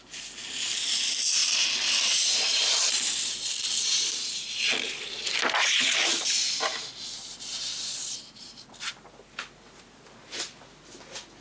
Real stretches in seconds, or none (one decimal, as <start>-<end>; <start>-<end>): 0.0-11.4